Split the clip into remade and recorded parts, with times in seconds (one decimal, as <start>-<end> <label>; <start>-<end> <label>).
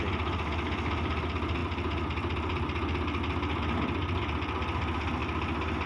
0.0-5.9 recorded